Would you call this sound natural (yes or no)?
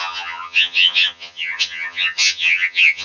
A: no